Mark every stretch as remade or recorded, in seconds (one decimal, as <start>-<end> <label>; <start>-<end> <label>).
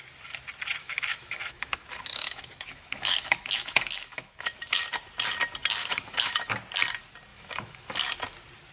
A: 0.0-0.8 recorded; 0.8-4.8 remade; 4.8-5.8 recorded; 5.8-6.5 remade; 6.5-7.3 recorded; 7.3-8.1 remade; 8.1-8.7 recorded